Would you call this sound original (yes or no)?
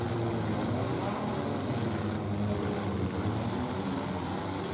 yes